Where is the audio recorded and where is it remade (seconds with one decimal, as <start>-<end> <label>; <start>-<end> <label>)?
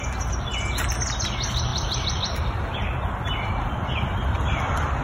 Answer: 0.0-1.7 recorded; 1.7-5.0 remade